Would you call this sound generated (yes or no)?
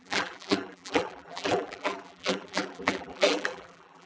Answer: yes